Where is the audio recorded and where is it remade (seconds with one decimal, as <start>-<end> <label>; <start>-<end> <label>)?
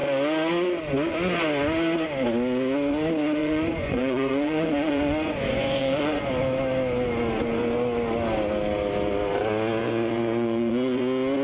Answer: 0.0-3.4 recorded; 3.4-6.3 remade; 6.3-9.8 recorded; 9.8-11.0 remade; 11.0-11.4 recorded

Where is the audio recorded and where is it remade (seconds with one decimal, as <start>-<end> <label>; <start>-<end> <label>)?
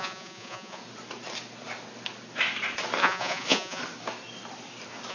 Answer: 0.0-0.8 remade; 0.8-3.0 recorded; 3.0-3.8 remade; 3.8-5.1 recorded